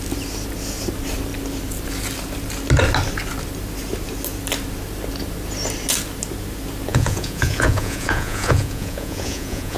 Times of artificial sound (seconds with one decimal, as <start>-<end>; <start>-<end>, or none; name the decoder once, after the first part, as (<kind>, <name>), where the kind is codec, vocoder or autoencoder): 6.9-9.8 (vocoder, Vocos)